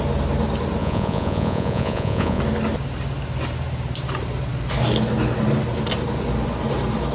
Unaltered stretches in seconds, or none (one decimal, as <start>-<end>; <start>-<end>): 0.0-0.8; 2.4-7.1